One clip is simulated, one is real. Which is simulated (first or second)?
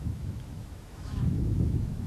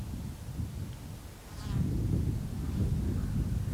first